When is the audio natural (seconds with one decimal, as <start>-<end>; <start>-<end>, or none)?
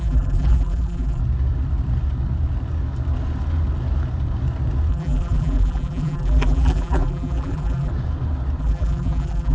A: 1.2-4.9; 7.9-8.6